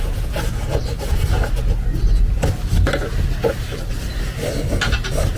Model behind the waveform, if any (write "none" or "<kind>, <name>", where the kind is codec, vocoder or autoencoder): none